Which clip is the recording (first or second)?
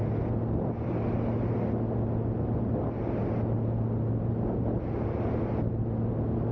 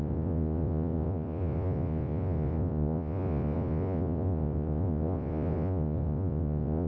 first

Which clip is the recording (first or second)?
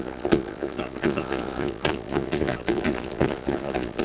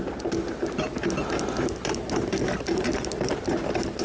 second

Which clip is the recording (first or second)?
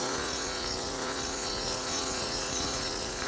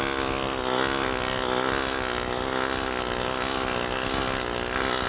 second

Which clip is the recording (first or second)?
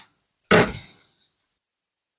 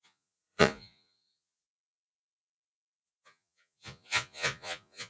first